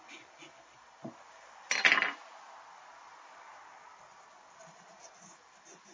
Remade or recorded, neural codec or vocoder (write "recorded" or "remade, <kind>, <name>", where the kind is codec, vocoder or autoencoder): recorded